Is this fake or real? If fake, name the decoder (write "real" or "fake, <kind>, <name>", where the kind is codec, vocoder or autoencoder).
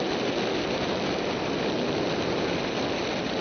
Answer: real